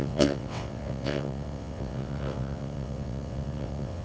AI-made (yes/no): yes